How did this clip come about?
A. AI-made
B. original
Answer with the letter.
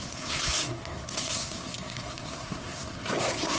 A